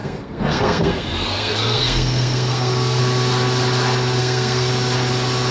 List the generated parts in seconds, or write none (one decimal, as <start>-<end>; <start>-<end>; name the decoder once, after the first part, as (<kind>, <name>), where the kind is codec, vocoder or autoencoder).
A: 0.0-3.0 (codec, SNAC); 4.2-4.7